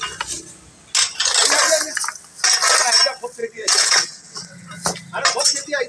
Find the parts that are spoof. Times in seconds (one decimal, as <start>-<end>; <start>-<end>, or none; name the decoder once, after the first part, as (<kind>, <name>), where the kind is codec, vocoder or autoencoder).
3.4-4.7 (vocoder, WaveNeXt)

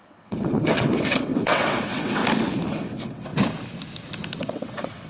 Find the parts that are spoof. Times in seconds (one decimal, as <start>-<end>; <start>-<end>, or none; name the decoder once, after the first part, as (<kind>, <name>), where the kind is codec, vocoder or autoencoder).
0.0-2.2 (vocoder, WaveNeXt); 2.7-3.3; 4.4-5.1

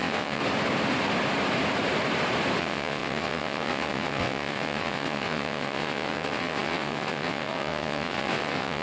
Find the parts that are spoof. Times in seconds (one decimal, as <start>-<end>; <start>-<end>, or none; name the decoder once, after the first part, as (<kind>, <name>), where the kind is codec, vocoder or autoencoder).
0.0-0.4 (vocoder, WaveNeXt); 2.6-8.8

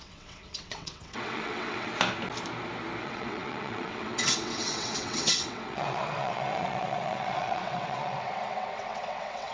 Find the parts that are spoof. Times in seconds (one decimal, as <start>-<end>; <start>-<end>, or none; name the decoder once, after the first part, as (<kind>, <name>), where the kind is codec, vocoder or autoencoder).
0.0-1.9 (vocoder, WaveNeXt); 3.0-9.5